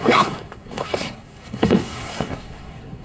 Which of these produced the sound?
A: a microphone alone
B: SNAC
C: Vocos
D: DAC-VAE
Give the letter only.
B